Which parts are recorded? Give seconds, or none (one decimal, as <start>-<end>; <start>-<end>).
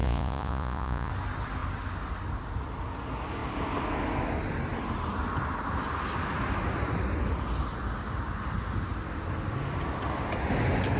1.1-11.0